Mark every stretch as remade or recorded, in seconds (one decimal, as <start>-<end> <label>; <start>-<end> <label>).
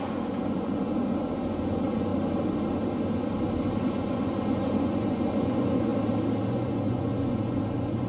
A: 0.0-2.1 remade; 2.1-3.8 recorded; 3.8-5.9 remade; 5.9-6.5 recorded; 6.5-8.1 remade